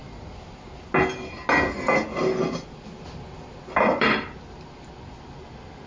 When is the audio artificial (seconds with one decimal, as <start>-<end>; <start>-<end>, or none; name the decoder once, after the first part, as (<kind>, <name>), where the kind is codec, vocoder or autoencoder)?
none